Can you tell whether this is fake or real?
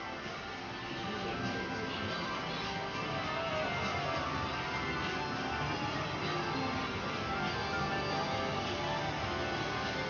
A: real